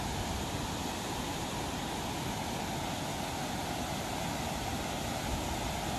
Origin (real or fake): real